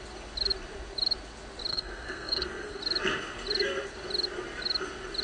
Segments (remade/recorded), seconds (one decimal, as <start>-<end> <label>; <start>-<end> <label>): 0.0-1.7 recorded; 1.7-2.8 remade; 2.8-5.2 recorded